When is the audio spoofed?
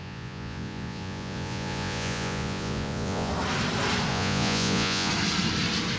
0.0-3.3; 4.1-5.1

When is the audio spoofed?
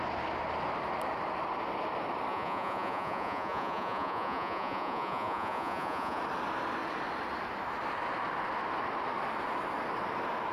2.3-6.2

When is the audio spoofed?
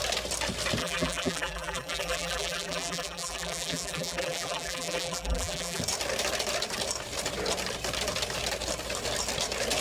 0.8-5.8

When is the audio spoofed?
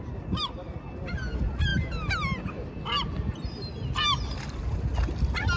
none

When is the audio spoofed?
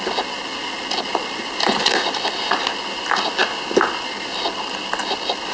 none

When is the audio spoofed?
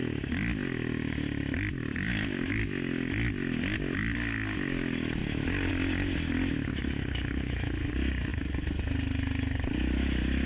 2.1-2.6; 5.2-5.7; 6.7-7.9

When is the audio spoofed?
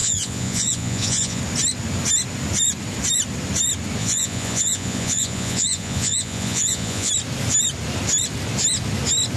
0.0-1.4; 4.0-7.1